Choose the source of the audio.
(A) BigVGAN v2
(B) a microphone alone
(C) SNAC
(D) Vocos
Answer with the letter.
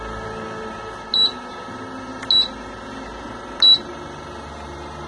B